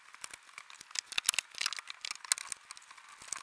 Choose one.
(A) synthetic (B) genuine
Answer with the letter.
B